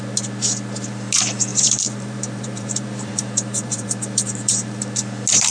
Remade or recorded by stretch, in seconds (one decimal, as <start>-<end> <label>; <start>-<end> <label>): 0.0-1.5 recorded; 1.5-4.8 remade; 4.8-5.5 recorded

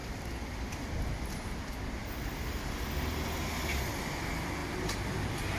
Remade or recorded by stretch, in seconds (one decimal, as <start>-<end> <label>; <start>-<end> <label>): 0.0-0.9 remade; 0.9-5.6 recorded

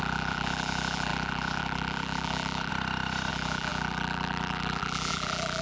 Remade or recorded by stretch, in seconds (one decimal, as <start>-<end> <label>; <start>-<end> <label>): 0.0-2.7 remade; 2.7-3.3 recorded; 3.3-5.6 remade

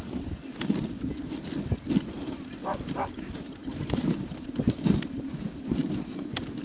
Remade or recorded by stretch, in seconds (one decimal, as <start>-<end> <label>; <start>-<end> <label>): 0.0-2.6 recorded; 2.6-3.1 remade; 3.1-3.6 recorded; 3.6-4.8 remade; 4.8-6.6 recorded

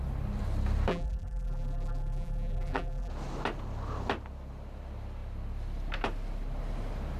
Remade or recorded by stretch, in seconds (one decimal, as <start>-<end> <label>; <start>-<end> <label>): 0.0-0.9 recorded; 0.9-3.1 remade; 3.1-7.2 recorded

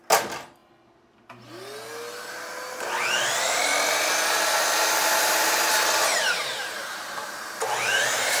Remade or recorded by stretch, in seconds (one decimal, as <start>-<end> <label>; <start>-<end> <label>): 0.0-5.0 recorded; 5.0-8.4 remade

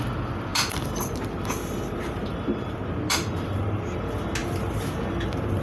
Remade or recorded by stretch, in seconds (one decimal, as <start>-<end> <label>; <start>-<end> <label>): 0.0-0.5 recorded; 0.5-3.9 remade; 3.9-4.4 recorded; 4.4-5.0 remade; 5.0-5.6 recorded